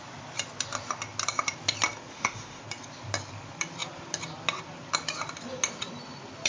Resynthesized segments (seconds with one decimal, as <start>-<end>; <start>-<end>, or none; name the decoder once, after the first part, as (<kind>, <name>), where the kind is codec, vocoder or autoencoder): 2.1-2.6 (autoencoder, DAC-VAE)